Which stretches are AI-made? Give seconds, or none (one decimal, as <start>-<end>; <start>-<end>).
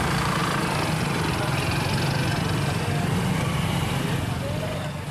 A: 0.0-0.4; 3.5-4.2